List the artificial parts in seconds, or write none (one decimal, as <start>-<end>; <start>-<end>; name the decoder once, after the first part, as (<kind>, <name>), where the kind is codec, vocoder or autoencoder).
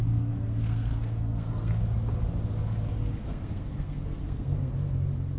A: 0.0-1.8 (codec, SNAC); 3.2-4.7